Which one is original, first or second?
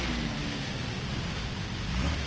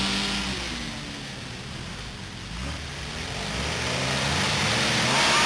second